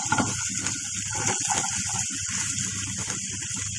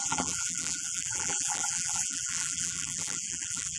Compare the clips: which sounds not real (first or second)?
second